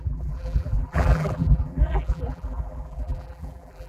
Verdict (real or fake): fake